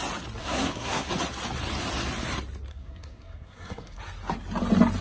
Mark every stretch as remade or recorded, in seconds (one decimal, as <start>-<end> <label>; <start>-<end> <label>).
0.0-0.4 recorded; 0.4-1.1 remade; 1.1-2.7 recorded; 2.7-4.0 remade; 4.0-5.0 recorded